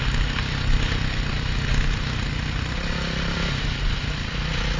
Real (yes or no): yes